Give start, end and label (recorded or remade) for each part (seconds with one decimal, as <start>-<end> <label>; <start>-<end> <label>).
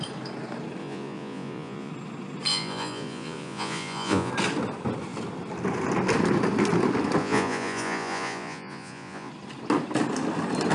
0.0-0.8 recorded; 0.8-1.9 remade; 1.9-2.5 recorded; 2.5-4.3 remade; 4.3-7.2 recorded; 7.2-9.3 remade; 9.3-10.7 recorded